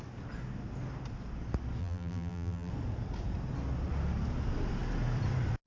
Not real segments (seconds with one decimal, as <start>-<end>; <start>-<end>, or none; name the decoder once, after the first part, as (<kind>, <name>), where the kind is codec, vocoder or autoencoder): 1.8-2.7 (vocoder, BigVGAN v2)

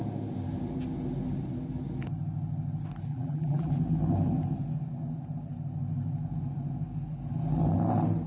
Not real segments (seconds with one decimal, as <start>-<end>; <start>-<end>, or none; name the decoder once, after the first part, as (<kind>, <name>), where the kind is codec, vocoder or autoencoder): 3.1-3.7 (vocoder, BigVGAN v2)

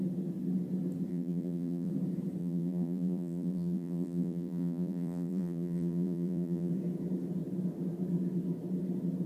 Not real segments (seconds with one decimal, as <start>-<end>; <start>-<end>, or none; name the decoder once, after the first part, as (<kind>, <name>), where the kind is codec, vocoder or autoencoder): 1.1-1.9 (vocoder, BigVGAN v2); 2.4-6.7

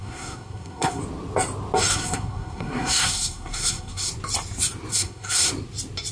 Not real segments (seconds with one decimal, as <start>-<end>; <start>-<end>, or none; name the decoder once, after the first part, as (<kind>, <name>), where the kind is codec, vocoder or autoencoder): 0.0-1.0 (codec, SNAC); 1.9-4.1; 4.9-5.5

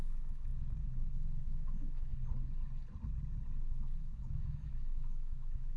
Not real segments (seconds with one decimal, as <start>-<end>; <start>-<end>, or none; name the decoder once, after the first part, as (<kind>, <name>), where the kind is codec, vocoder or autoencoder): 0.0-0.5 (autoencoder, DAC-VAE); 1.4-2.1; 4.0-5.8

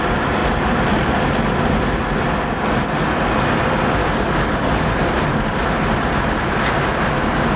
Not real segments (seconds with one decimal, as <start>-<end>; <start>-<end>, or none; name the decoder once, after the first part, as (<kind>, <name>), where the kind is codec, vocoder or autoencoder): 4.0-4.7 (codec, DAC)